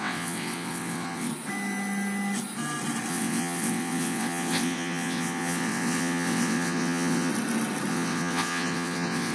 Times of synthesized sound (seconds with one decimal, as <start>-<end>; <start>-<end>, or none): 0.0-1.3; 3.1-7.3; 7.9-9.3